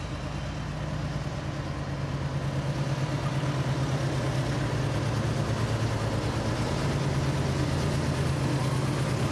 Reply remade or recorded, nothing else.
recorded